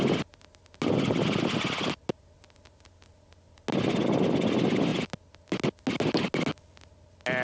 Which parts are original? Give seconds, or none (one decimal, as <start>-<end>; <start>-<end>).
0.0-7.4